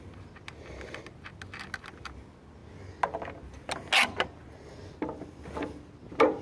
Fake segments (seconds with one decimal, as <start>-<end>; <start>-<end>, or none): none